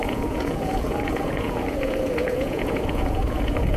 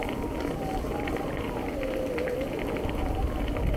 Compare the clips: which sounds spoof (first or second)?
first